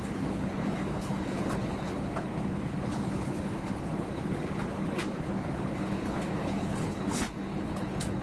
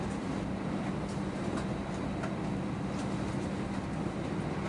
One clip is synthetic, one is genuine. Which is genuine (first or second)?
second